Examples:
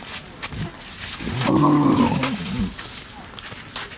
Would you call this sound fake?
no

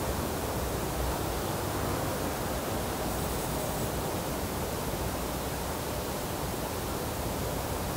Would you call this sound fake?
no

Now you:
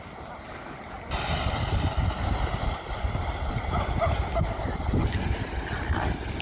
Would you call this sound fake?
no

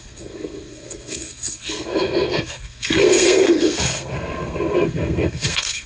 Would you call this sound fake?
yes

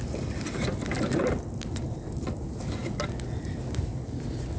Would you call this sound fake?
no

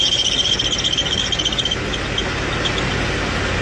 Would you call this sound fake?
no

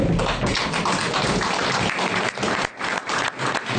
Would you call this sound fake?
no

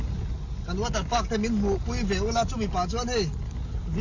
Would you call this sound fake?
no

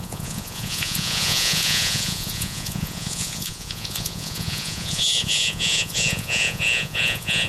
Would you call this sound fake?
yes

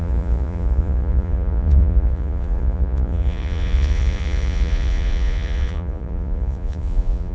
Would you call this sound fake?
yes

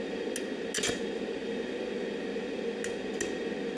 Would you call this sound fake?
no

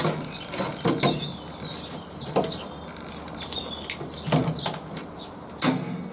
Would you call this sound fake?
no